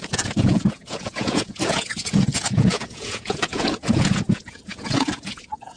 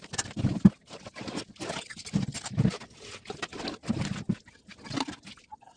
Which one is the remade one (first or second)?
first